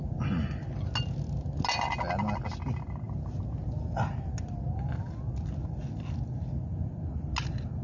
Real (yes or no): yes